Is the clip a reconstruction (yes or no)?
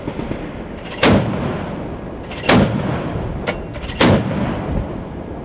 no